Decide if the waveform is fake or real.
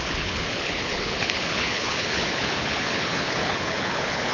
fake